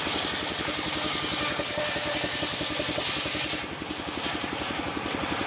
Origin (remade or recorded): recorded